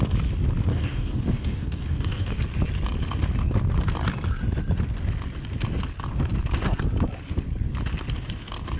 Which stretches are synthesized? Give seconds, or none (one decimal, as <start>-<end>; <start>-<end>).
0.7-2.4